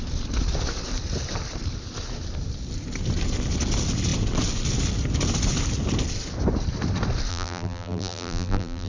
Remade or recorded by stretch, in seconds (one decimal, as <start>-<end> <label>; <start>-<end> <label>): 0.0-7.3 recorded; 7.3-8.9 remade